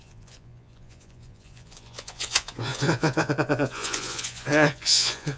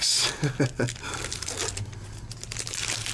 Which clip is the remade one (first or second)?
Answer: first